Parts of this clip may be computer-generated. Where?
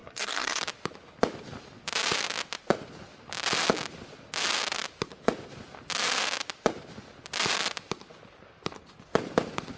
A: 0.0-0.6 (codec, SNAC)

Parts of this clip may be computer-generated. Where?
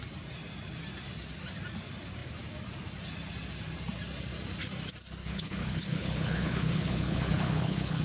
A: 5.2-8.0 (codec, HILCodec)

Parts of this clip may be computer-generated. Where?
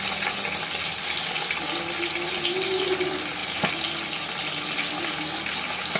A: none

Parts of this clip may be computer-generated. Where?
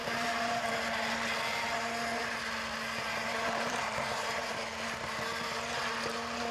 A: 0.0-0.7 (vocoder, BigVGAN v2); 3.2-4.5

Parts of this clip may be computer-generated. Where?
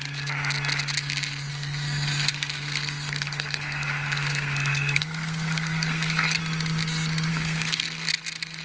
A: 1.5-6.4 (codec, SNAC); 7.3-8.1